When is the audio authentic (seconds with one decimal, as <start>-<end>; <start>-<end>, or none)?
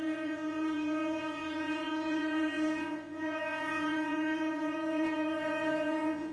none